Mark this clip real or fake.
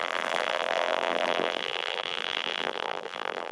fake